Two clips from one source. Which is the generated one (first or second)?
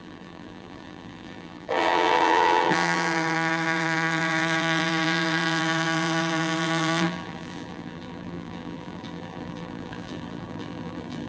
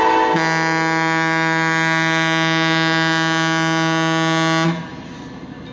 first